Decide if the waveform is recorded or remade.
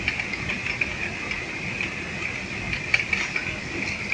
recorded